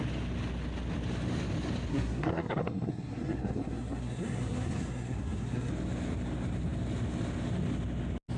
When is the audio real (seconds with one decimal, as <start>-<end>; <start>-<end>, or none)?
0.0-1.9; 5.7-8.4